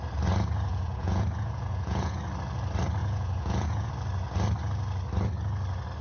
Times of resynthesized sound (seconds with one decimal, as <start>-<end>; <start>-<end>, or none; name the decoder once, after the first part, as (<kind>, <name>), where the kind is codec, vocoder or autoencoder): 0.7-2.2 (vocoder, Vocos); 3.0-3.9